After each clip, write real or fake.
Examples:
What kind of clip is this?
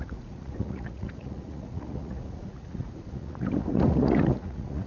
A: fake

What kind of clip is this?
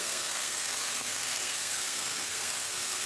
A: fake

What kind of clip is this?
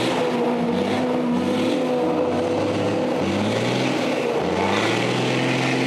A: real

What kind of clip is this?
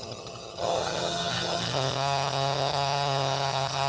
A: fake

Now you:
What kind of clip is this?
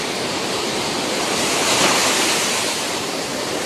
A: fake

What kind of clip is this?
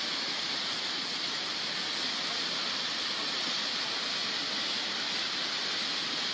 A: real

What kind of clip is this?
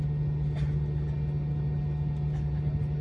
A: real